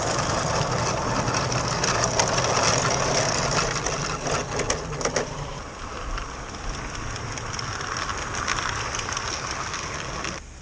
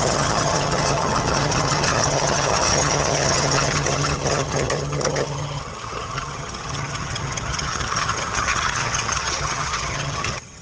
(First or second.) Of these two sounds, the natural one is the first